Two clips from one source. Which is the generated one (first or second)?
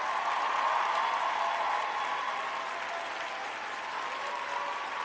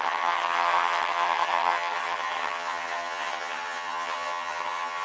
second